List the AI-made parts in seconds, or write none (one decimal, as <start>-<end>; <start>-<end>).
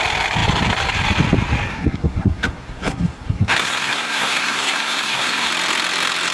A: 1.7-5.5